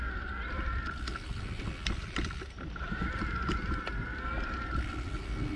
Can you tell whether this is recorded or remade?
recorded